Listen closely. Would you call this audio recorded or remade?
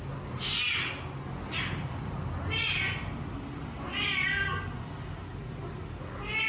recorded